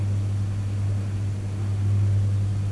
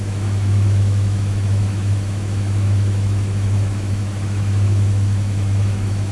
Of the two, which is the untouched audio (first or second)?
first